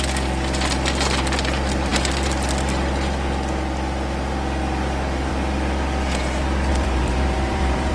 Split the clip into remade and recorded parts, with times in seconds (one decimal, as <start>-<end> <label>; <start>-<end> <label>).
0.0-6.7 recorded; 6.7-7.9 remade